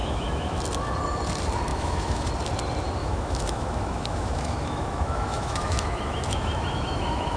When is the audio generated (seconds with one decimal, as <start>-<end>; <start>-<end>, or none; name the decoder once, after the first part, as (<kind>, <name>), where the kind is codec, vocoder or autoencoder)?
0.0-0.6 (autoencoder, DAC-VAE); 1.7-2.3; 3.0-7.4